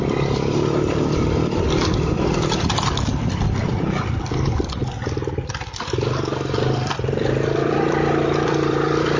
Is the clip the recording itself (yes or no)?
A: no